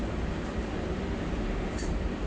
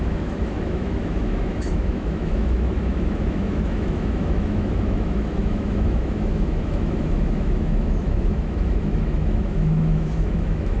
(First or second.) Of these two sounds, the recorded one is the first